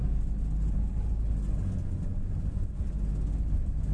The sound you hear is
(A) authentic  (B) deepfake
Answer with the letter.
A